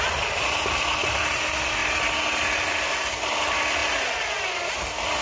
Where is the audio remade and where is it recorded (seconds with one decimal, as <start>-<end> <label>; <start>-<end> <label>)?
0.0-5.2 recorded